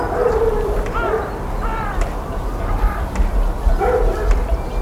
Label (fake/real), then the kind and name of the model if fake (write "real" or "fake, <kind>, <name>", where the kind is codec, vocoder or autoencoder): real